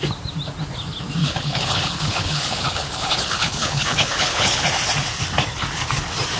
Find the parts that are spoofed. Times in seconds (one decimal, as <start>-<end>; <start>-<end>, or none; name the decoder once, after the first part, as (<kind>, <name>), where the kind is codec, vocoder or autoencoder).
1.2-4.6 (codec, HILCodec)